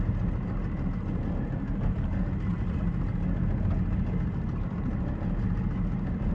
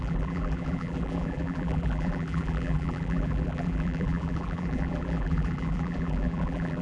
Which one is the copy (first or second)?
second